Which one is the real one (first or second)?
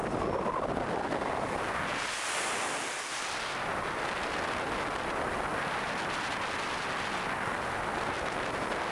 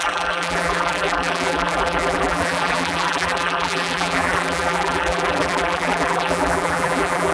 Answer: first